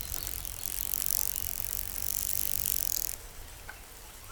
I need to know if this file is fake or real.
real